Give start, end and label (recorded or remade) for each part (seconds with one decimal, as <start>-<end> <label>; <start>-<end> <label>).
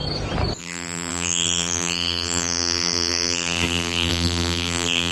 0.0-0.6 recorded; 0.6-5.1 remade